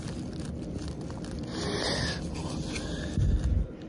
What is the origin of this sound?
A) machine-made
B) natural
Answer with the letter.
B